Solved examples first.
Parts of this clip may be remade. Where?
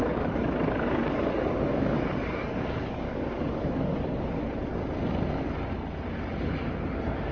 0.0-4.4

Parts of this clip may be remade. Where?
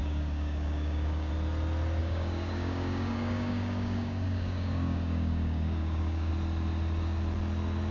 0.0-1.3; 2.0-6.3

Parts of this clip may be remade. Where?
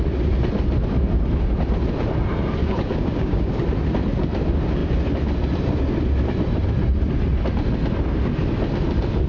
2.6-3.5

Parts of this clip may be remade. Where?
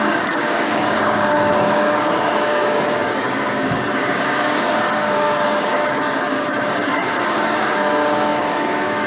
0.0-9.1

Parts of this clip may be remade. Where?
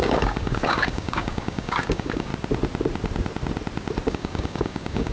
0.0-2.3; 4.1-5.1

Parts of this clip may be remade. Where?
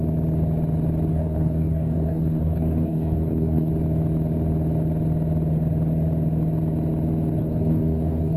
1.1-3.7; 7.4-8.4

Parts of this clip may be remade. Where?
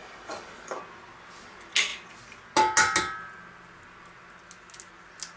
0.0-0.8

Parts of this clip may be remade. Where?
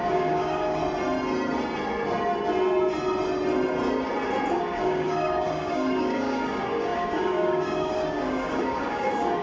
0.0-0.8; 4.5-9.4